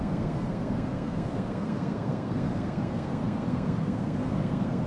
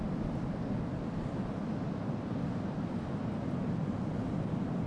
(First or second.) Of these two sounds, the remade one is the first